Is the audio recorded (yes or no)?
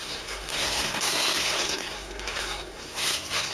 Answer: no